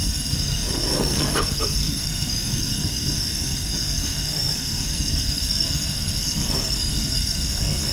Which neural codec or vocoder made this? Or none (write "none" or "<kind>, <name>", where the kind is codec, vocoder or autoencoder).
codec, SNAC